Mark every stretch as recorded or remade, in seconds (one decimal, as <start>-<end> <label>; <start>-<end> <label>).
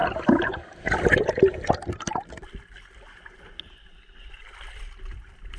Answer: 0.0-5.6 recorded